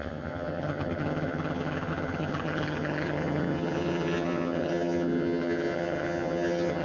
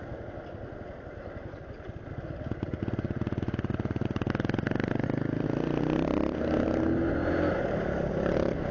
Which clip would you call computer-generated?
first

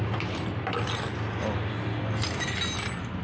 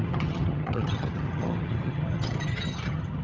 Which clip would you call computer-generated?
second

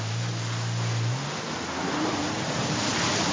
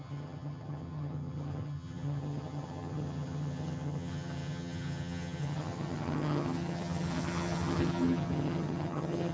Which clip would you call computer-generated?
second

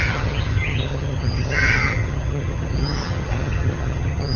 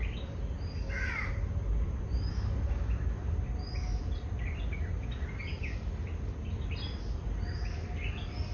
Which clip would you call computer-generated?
first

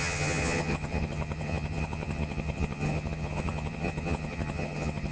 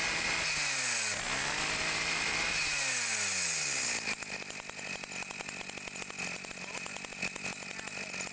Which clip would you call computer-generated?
first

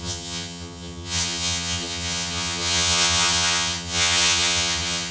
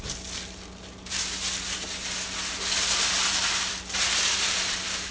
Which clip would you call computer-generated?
first